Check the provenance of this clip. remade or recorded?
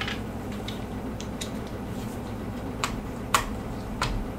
remade